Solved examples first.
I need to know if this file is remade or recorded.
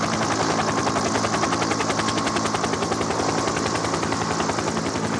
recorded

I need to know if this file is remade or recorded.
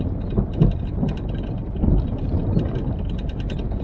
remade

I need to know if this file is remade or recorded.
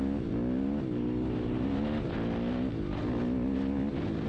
recorded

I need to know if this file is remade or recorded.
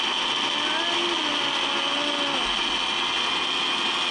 recorded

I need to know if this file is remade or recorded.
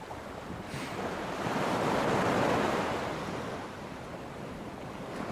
recorded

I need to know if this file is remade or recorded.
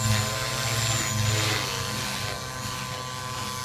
recorded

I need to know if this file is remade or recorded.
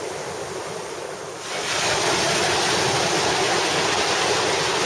recorded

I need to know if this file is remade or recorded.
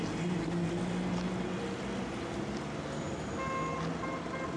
recorded